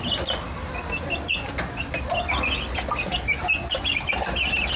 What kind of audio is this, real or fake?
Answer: real